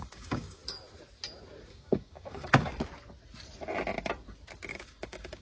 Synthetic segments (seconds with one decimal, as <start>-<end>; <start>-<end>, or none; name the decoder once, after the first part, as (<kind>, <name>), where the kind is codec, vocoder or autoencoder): 0.0-0.6 (codec, DAC); 1.7-2.7; 4.7-5.4